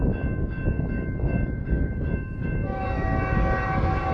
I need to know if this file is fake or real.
fake